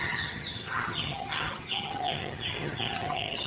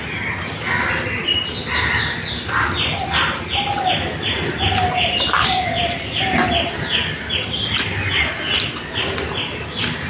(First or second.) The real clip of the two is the second